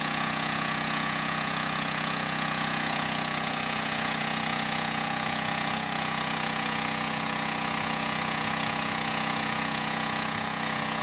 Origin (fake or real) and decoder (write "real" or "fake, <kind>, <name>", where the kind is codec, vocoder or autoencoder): fake, vocoder, Vocos